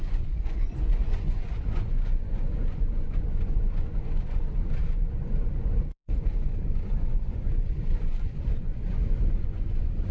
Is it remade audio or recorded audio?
remade